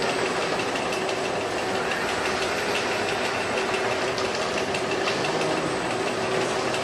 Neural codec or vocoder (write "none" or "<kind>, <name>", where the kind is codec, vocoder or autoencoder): none